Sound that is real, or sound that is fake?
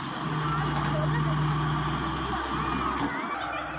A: real